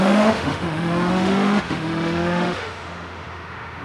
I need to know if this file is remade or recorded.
remade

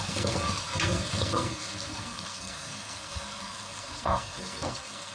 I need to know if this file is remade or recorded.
remade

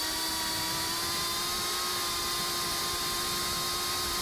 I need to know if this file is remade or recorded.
recorded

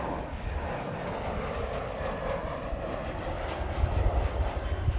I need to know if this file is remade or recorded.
recorded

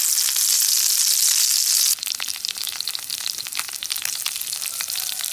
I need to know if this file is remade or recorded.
recorded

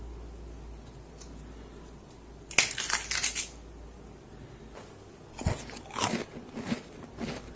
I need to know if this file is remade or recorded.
recorded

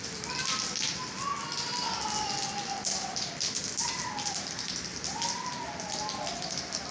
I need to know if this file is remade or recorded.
recorded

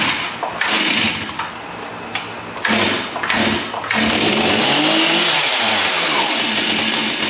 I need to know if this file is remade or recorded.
recorded